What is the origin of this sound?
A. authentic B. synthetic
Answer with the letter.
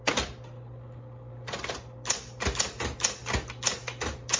A